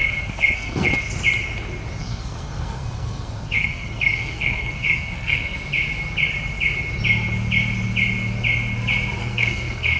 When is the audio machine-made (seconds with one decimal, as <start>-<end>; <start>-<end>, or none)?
0.0-1.1; 2.0-5.6; 9.2-10.0